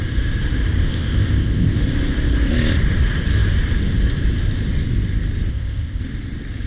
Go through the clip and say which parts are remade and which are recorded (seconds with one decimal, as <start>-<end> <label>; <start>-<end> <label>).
0.0-0.9 recorded; 0.9-1.8 remade; 1.8-5.5 recorded; 5.5-6.0 remade; 6.0-6.7 recorded